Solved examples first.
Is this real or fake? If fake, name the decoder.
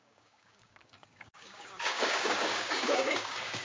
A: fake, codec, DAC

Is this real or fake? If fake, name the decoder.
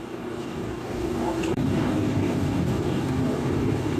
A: fake, codec, DAC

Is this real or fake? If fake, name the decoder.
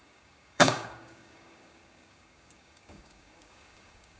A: fake, codec, DAC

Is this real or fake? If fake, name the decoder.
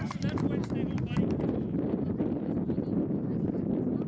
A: real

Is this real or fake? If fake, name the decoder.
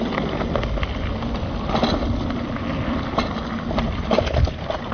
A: real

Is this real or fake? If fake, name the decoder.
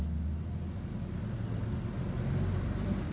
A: real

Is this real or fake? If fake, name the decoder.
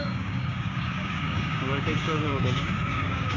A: fake, codec, DAC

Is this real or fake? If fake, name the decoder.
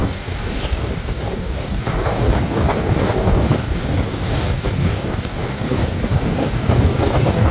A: fake, codec, DAC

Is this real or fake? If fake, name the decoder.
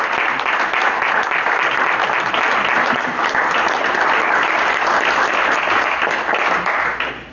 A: real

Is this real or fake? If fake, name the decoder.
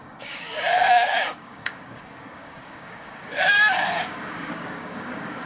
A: fake, codec, DAC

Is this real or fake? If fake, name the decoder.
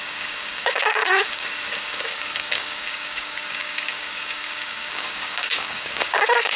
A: fake, codec, DAC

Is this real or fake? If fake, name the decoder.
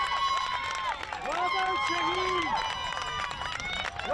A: real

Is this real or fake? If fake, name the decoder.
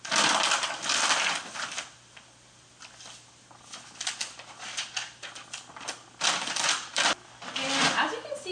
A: real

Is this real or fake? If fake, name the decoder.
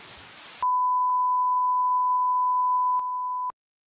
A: real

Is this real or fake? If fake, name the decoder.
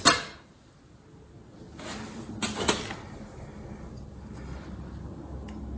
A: real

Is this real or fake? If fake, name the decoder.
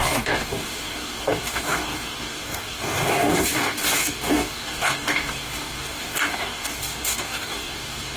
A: fake, codec, DAC